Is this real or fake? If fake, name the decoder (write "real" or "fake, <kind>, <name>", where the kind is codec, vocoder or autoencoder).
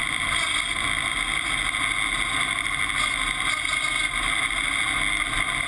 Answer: real